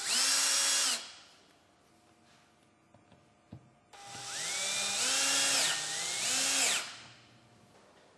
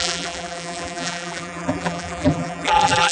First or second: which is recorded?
first